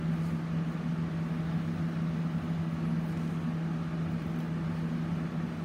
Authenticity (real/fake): real